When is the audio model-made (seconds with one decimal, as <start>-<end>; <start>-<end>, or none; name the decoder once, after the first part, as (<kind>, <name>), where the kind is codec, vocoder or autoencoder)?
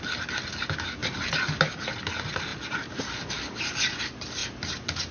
1.0-1.6 (vocoder, BigVGAN v2); 2.5-3.6; 4.4-5.1